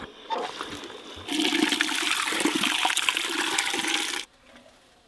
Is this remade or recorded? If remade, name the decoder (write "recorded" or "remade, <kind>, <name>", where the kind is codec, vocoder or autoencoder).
recorded